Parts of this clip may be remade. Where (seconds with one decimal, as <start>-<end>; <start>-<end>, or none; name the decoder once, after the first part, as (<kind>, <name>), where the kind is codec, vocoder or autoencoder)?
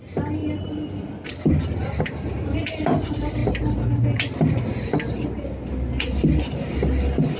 none